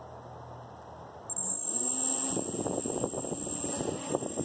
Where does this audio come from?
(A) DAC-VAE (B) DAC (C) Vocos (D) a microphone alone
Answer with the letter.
D